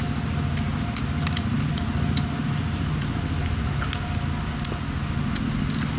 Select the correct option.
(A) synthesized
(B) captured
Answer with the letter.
B